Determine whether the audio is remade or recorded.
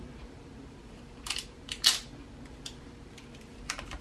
remade